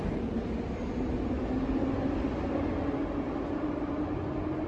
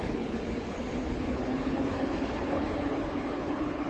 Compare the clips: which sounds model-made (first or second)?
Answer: second